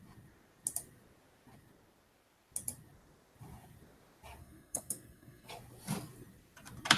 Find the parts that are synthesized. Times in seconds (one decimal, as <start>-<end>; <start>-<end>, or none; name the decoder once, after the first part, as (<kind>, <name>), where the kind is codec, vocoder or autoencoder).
4.4-5.5 (codec, SNAC)